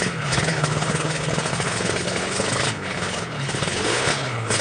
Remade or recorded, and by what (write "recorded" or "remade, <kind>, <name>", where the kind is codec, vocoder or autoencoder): remade, codec, HILCodec